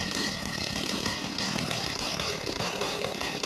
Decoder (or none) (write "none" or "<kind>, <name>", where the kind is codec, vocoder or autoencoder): codec, SNAC